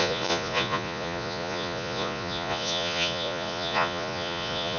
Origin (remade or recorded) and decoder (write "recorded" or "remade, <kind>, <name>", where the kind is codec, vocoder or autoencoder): remade, vocoder, Vocos